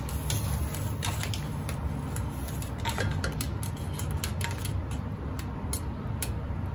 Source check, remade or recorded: recorded